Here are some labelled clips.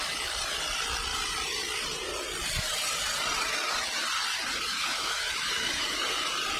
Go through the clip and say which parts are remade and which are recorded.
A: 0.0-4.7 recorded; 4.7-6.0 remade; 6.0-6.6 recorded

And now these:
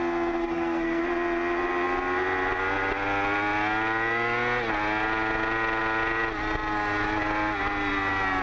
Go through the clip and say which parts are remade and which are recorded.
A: 0.0-0.4 recorded; 0.4-1.0 remade; 1.0-8.4 recorded